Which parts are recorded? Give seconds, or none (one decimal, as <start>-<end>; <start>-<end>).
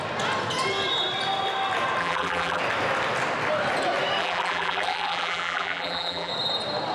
0.0-2.0; 2.6-4.2; 6.3-6.9